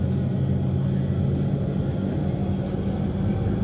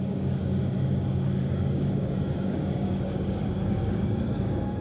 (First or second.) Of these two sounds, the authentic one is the first